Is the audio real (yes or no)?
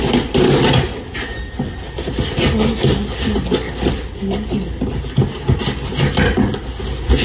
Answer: yes